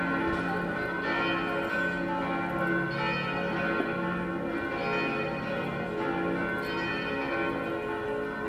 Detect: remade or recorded recorded